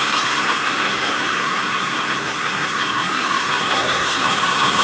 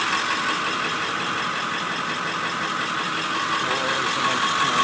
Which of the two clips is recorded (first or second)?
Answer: second